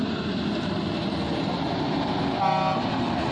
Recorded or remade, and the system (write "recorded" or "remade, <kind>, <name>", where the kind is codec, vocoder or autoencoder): recorded